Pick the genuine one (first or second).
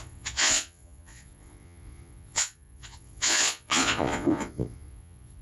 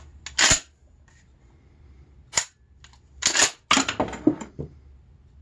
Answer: second